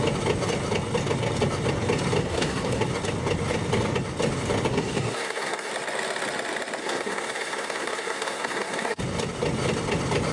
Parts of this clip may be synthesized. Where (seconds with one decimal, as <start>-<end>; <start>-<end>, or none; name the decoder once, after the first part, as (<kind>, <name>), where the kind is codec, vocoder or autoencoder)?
2.2-2.8 (codec, SNAC); 4.7-5.7; 6.8-9.0